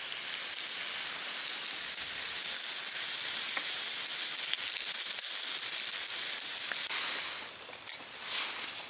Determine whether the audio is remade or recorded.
recorded